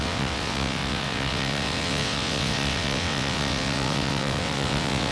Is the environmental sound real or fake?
fake